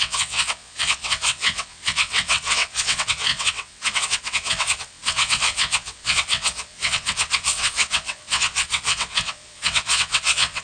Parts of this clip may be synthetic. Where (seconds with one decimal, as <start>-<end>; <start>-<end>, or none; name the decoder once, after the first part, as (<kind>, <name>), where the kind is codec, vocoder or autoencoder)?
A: 0.0-10.6 (vocoder, WaveNeXt)